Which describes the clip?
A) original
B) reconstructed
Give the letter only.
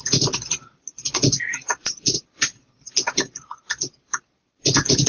A